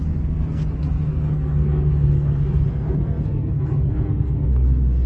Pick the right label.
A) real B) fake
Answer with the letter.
B